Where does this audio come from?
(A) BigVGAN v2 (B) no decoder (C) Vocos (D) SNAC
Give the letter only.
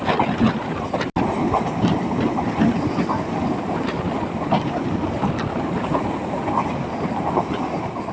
B